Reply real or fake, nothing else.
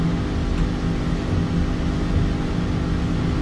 real